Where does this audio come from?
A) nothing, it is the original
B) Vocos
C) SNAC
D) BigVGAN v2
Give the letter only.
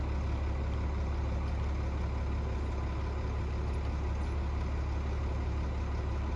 A